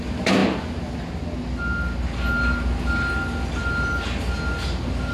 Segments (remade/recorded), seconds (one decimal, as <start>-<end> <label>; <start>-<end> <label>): 0.0-5.1 recorded